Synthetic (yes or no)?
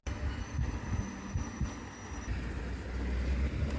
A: no